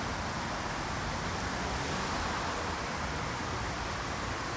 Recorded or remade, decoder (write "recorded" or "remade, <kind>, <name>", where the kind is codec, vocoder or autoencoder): recorded